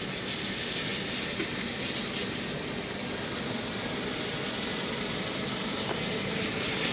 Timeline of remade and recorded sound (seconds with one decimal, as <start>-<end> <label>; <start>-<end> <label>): 0.0-6.9 recorded